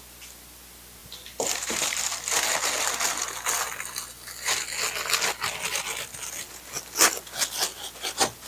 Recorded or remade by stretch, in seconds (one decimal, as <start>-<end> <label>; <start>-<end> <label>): 0.0-1.0 recorded; 1.0-2.1 remade; 2.1-8.5 recorded